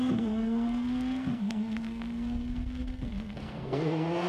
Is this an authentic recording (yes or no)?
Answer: no